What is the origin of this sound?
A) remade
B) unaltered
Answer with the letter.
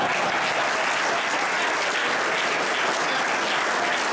B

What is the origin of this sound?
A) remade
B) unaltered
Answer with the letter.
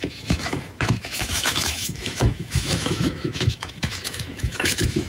A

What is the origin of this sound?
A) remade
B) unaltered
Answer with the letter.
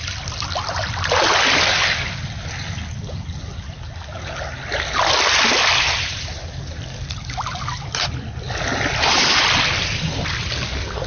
B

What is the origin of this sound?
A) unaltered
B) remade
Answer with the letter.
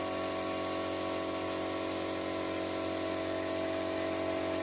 A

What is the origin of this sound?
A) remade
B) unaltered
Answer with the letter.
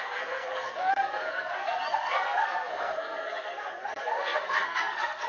A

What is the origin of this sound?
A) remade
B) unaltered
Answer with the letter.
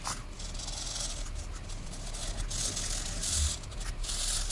B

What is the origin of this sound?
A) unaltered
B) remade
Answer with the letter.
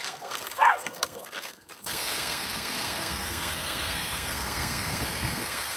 B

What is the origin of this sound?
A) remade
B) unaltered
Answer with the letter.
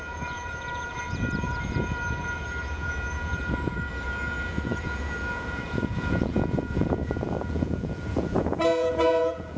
A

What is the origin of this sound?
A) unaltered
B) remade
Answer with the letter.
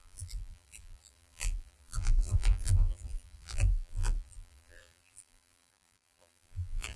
B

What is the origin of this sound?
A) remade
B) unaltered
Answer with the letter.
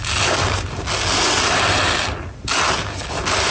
B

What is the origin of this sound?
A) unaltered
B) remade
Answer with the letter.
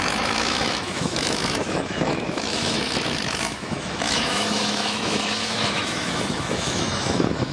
B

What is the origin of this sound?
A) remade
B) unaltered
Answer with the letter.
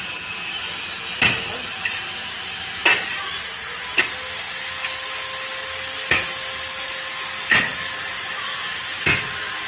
B